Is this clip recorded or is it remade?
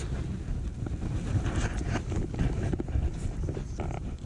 recorded